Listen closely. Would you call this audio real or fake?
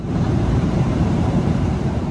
fake